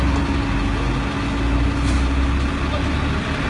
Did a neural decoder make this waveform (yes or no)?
no